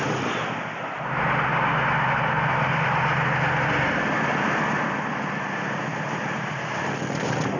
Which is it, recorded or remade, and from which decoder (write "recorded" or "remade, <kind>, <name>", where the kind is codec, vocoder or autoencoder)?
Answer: recorded